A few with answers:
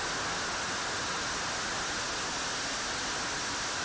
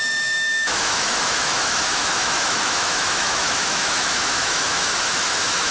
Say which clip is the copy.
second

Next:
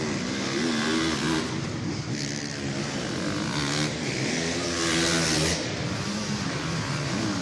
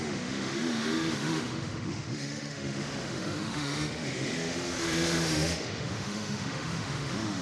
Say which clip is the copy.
second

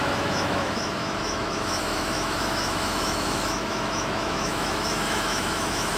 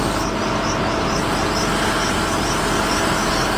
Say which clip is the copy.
first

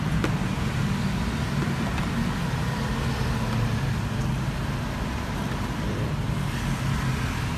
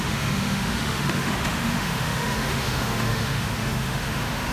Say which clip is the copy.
second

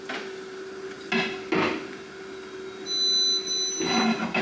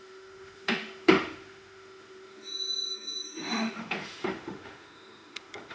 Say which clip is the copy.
second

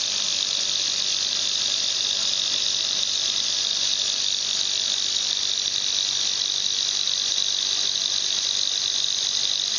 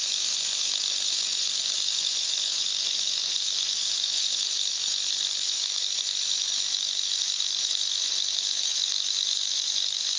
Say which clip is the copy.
second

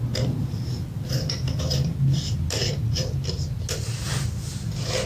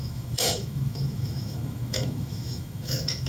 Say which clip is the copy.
second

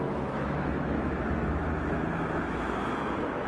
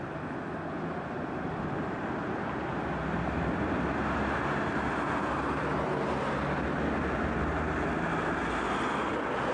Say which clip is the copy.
first